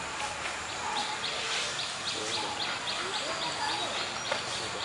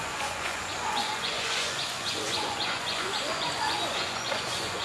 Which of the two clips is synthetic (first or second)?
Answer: second